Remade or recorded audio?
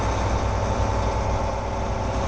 recorded